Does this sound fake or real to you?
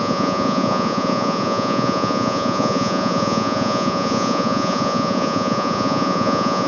fake